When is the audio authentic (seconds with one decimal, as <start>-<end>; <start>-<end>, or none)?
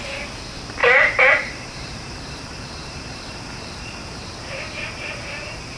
0.0-0.8; 4.3-5.8